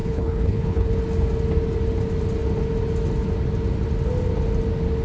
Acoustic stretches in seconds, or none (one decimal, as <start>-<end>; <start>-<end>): 0.9-5.0